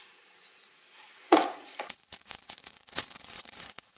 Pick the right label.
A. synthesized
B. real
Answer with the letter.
A